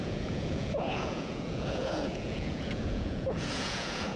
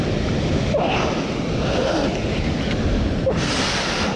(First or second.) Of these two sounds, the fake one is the first